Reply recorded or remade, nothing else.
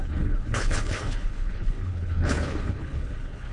remade